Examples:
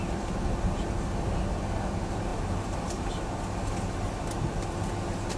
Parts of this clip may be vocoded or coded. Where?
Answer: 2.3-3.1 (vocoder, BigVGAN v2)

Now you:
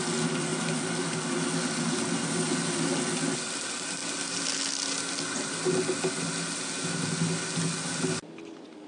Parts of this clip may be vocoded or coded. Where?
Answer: none

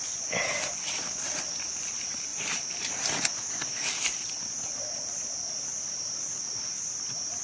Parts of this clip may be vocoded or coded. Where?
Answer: 2.3-2.9 (vocoder, BigVGAN v2)

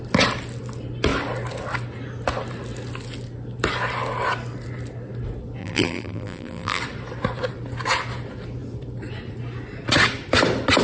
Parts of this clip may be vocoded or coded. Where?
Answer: 5.6-6.8 (vocoder, BigVGAN v2)

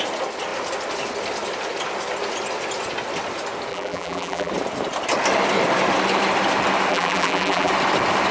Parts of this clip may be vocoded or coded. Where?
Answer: 3.7-4.5 (vocoder, BigVGAN v2); 6.9-7.7

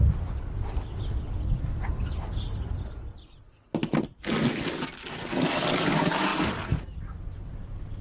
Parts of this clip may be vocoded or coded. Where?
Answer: 6.3-7.0 (vocoder, BigVGAN v2)